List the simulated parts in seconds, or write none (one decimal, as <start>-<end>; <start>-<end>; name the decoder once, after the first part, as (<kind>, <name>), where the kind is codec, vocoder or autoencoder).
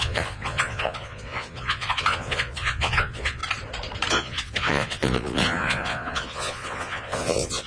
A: 0.0-3.4 (vocoder, Vocos); 4.1-7.7